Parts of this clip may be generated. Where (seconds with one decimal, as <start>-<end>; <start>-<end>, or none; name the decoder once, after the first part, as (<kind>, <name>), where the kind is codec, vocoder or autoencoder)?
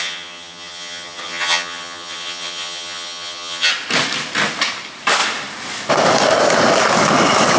0.0-3.7 (vocoder, HiFi-GAN)